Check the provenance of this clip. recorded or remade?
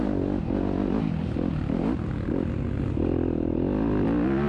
recorded